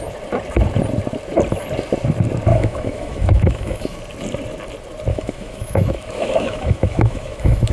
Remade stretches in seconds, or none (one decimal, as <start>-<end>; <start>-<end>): 2.5-4.0; 5.1-7.7